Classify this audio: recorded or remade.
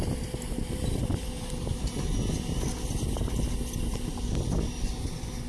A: recorded